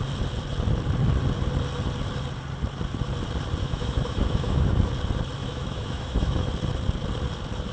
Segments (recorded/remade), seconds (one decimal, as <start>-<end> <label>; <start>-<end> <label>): 0.0-3.6 recorded; 3.6-4.9 remade; 4.9-5.4 recorded; 5.4-6.5 remade; 6.5-7.7 recorded